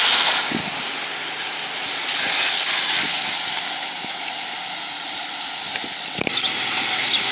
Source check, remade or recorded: recorded